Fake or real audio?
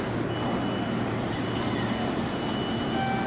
real